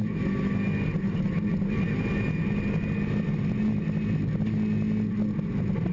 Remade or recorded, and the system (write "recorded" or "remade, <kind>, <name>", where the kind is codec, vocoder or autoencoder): recorded